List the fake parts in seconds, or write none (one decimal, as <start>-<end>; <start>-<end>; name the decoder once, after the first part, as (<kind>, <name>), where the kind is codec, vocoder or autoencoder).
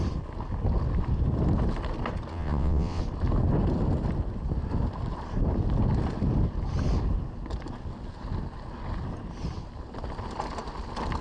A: 2.3-3.0 (vocoder, WaveNeXt)